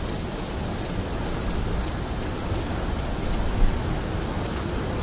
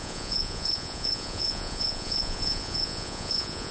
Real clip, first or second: first